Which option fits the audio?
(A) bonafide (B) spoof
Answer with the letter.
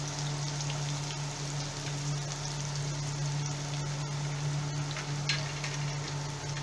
A